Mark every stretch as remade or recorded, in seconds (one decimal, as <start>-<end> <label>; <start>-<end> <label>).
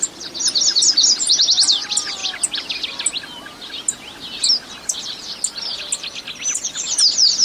0.0-7.4 recorded